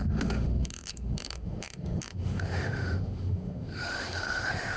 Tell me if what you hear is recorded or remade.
remade